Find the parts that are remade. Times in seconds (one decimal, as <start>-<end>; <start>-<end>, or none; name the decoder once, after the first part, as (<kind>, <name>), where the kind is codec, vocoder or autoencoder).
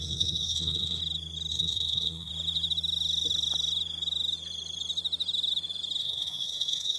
0.0-1.0 (codec, SNAC); 1.5-2.3; 6.0-7.0